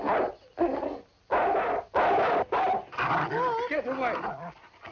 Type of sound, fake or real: real